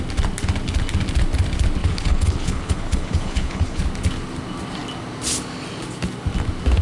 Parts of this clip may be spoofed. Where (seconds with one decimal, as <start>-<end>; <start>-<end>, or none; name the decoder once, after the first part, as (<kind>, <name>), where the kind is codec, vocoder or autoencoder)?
1.8-3.8 (codec, HILCodec)